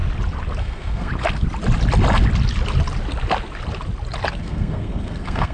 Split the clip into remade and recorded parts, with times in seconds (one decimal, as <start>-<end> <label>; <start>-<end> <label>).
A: 0.0-0.6 recorded; 0.6-1.1 remade; 1.1-4.4 recorded; 4.4-5.5 remade